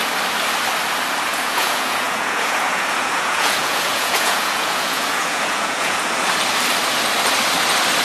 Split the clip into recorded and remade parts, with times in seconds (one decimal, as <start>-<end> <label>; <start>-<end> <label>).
0.0-1.3 recorded; 1.3-6.1 remade; 6.1-8.0 recorded